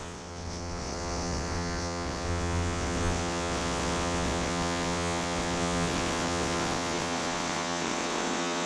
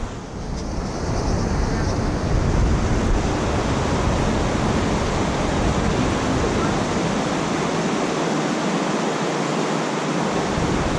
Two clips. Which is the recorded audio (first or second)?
second